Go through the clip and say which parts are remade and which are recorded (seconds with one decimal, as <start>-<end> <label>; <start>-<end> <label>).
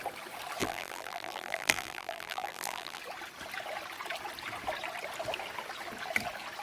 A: 0.0-0.6 recorded; 0.6-3.0 remade; 3.0-6.6 recorded